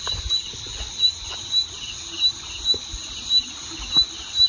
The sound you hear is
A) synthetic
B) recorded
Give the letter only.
B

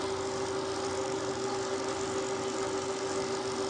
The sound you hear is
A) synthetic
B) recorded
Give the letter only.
B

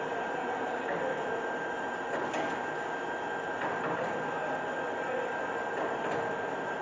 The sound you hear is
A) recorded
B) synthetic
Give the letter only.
A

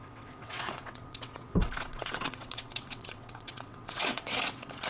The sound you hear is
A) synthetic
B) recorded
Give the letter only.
A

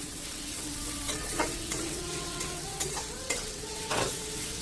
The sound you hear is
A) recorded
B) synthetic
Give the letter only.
B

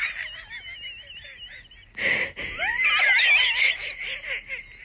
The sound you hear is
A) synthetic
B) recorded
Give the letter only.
B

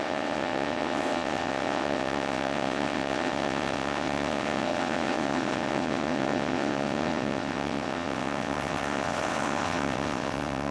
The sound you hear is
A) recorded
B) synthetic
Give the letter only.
B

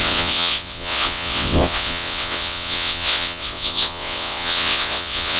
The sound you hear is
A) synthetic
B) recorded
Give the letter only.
A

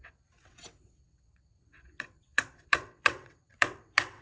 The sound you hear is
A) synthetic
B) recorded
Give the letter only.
A